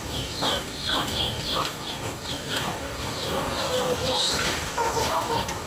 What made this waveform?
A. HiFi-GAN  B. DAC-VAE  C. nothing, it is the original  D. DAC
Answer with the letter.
D